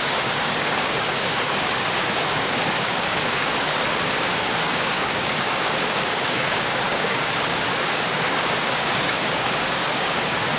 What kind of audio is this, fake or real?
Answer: fake